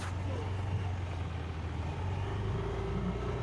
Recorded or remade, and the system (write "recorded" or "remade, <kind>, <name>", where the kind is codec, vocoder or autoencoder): recorded